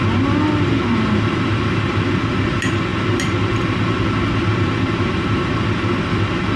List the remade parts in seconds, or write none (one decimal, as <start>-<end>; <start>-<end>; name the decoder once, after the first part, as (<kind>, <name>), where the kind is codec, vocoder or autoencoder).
none